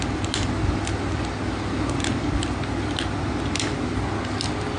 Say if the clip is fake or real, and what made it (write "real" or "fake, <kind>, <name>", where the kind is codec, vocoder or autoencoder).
real